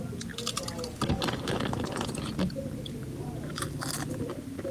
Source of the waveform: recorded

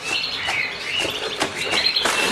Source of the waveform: recorded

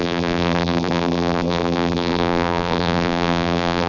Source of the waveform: remade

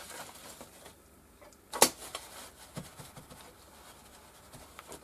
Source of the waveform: recorded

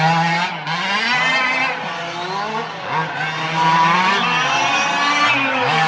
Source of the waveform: recorded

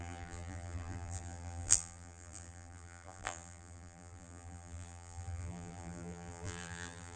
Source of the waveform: remade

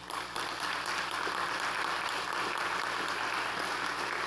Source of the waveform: recorded